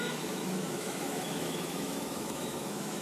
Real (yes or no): no